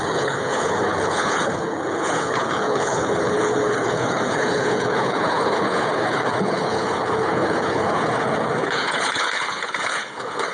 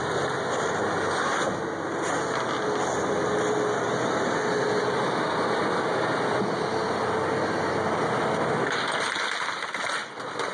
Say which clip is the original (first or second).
second